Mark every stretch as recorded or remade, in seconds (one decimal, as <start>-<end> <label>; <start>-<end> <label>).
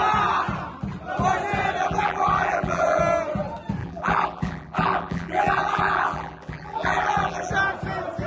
0.0-1.8 recorded; 1.8-3.0 remade; 3.0-3.8 recorded; 3.8-7.5 remade; 7.5-8.3 recorded